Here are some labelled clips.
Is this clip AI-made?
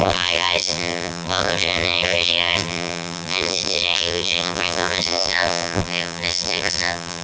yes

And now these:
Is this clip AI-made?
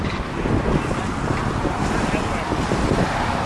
no